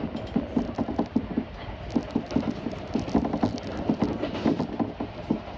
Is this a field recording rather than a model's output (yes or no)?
yes